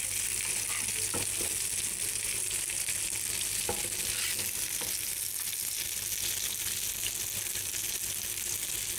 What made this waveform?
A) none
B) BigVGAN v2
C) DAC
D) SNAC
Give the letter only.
A